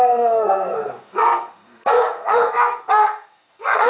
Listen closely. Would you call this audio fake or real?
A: fake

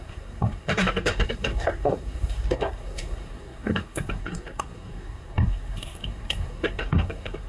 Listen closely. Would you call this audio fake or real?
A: fake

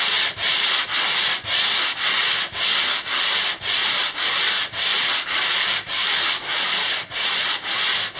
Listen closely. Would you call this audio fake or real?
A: real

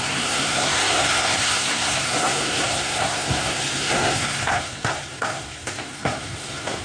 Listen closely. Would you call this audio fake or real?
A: fake